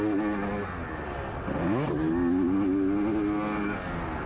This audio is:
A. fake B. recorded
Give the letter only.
B